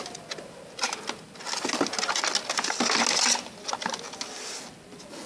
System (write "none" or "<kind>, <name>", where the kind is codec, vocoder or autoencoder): none